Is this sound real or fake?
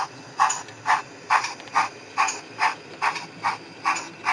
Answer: real